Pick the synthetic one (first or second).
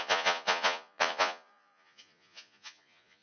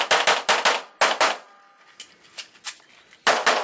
first